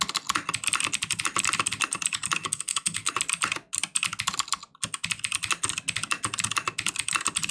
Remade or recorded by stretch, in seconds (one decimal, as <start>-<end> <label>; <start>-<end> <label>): 0.0-2.4 recorded; 2.4-3.1 remade; 3.1-7.5 recorded